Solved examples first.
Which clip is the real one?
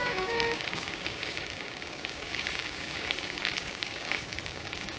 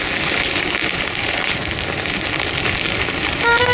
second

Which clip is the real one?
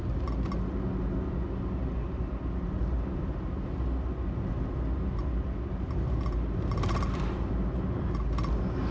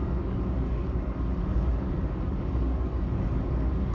first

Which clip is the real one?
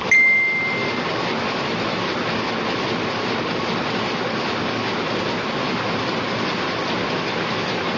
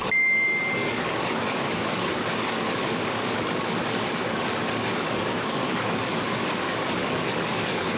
first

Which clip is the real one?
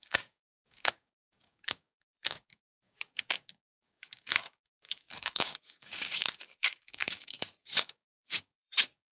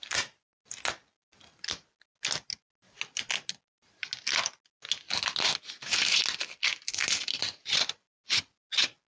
second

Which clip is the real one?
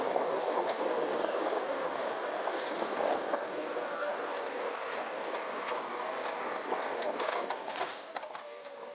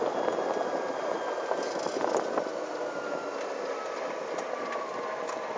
second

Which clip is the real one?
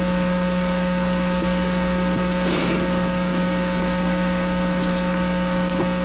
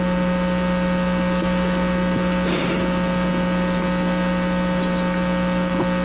second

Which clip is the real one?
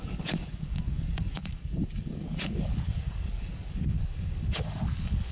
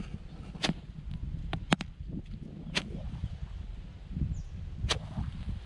second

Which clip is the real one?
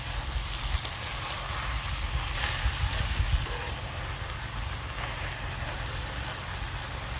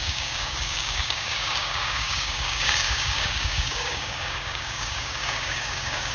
first